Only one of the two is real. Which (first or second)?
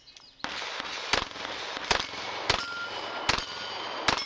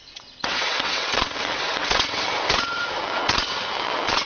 first